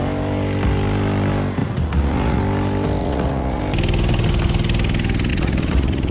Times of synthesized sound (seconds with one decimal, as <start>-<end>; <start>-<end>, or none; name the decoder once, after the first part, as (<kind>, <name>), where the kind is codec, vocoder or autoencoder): 1.6-2.4 (vocoder, Vocos); 3.0-3.6; 5.3-6.1